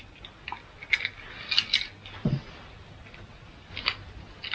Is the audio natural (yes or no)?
yes